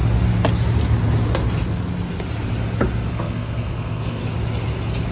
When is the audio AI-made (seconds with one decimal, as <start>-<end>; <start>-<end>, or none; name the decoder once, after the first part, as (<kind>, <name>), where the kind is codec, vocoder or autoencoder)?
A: 3.1-4.2 (codec, SNAC)